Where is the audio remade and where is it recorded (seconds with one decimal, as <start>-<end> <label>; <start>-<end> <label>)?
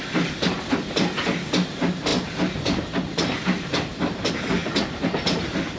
0.0-5.8 recorded